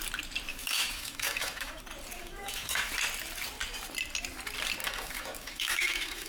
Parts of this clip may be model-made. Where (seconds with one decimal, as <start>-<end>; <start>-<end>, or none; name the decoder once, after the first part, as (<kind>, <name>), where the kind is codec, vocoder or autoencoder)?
0.5-1.8 (autoencoder, DAC-VAE); 2.2-2.9; 4.8-6.3